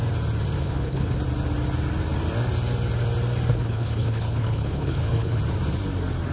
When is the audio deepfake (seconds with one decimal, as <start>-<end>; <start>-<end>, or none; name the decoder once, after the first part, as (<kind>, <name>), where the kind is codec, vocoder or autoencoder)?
0.6-1.2 (codec, HILCodec); 3.5-5.4